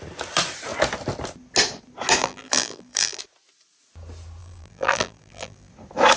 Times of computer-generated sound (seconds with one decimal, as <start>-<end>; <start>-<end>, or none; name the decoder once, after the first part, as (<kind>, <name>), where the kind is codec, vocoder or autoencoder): 2.2-3.2 (vocoder, BigVGAN v2); 4.4-5.7